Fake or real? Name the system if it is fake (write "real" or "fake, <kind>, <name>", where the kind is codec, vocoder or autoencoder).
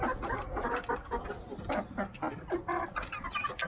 real